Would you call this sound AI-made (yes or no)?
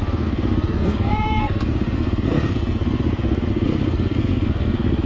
yes